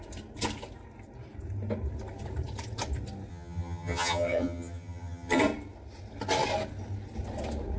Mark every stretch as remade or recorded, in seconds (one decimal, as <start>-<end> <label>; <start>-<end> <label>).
0.0-3.3 recorded; 3.3-5.4 remade; 5.4-7.8 recorded